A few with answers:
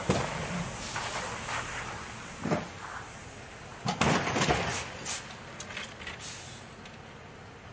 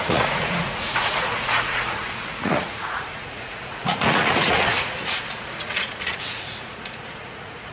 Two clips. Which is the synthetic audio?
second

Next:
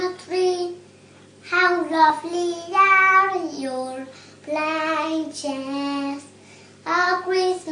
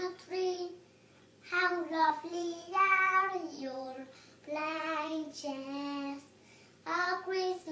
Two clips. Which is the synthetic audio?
second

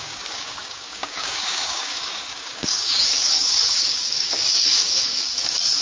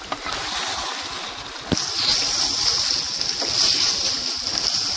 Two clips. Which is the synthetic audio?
first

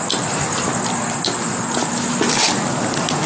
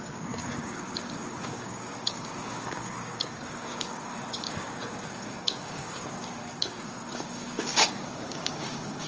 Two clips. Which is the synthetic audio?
second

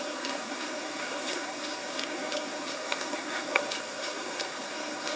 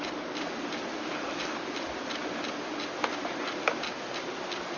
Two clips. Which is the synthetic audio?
first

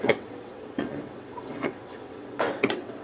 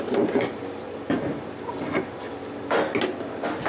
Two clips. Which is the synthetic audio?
first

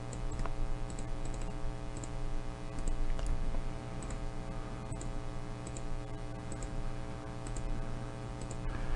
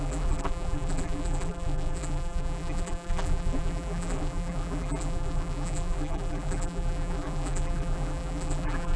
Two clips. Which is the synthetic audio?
second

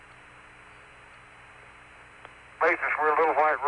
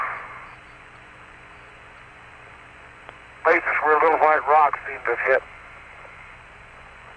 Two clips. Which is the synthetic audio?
second